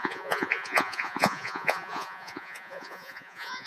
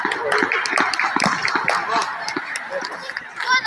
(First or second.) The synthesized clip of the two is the first